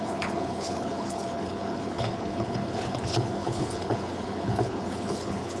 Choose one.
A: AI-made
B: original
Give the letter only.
A